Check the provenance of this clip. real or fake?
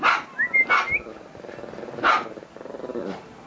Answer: real